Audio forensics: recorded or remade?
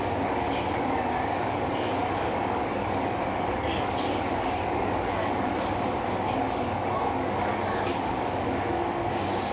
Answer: remade